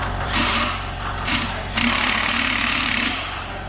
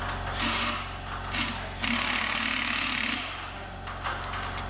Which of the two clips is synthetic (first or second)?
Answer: first